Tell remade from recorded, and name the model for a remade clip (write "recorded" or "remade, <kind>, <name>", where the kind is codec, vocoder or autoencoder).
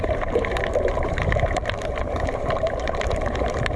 remade, vocoder, BigVGAN v2